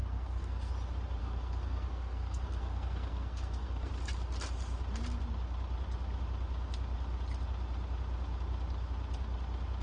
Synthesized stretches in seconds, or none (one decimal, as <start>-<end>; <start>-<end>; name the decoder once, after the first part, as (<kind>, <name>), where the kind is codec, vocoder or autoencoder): 0.0-0.7 (codec, SNAC); 1.2-3.9